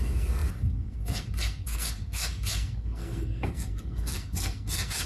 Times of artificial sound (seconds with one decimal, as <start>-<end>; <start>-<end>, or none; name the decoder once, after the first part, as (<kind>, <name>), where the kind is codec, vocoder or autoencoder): 0.0-5.1 (codec, SNAC)